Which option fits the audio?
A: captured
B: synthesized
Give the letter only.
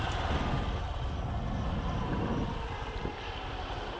A